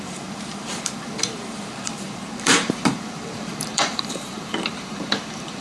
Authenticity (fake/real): fake